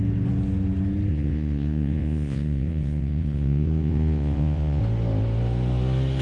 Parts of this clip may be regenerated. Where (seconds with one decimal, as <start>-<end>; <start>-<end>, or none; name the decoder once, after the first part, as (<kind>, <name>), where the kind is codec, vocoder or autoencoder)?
1.1-4.8 (vocoder, Vocos)